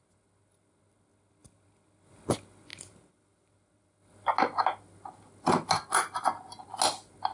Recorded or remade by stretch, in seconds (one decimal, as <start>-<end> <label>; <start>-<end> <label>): 0.0-7.3 recorded